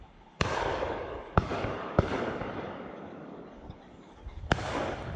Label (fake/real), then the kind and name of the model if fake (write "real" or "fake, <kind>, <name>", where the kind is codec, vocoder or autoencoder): fake, codec, DAC